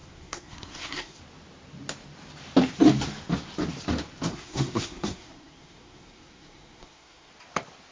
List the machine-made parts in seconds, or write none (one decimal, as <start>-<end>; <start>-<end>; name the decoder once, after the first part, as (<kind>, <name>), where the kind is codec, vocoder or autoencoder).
0.0-1.2 (codec, SNAC); 4.3-7.3

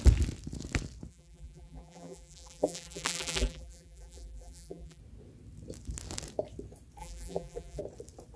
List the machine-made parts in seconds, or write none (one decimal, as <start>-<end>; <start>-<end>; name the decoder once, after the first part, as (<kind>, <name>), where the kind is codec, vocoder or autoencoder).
1.1-5.0 (vocoder, BigVGAN v2); 7.0-7.8